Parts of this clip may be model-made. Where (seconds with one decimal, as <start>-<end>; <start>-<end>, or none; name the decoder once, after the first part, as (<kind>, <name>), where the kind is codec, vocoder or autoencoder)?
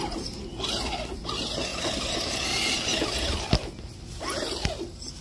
0.5-1.2 (vocoder, BigVGAN v2); 1.7-4.8